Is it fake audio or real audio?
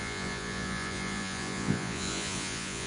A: fake